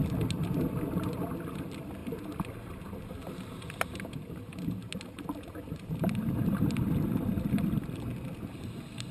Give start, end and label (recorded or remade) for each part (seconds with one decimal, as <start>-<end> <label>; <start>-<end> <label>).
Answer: 0.0-9.1 recorded